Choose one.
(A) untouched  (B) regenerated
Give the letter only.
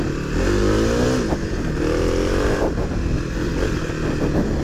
A